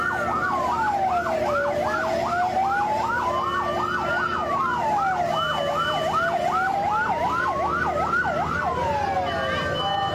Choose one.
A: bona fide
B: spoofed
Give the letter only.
A